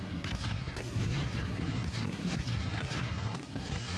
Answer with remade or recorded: remade